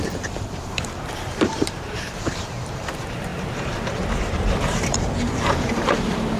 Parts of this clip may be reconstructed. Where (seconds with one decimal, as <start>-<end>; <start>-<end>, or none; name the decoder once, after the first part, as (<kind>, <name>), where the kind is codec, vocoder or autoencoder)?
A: 0.0-6.4 (vocoder, BigVGAN v2)